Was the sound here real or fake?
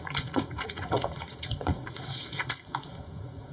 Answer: fake